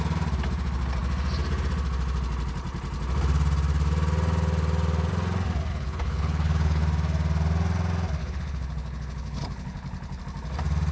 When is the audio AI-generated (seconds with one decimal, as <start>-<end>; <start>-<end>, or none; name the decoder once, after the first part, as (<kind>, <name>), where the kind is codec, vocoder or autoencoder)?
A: 5.7-6.8 (codec, HILCodec); 8.2-10.2